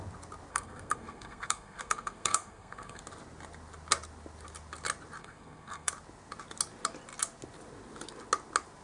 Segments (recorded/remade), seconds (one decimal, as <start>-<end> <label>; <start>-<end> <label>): 0.0-0.5 recorded; 0.5-3.0 remade; 3.0-5.2 recorded; 5.2-5.9 remade; 5.9-8.8 recorded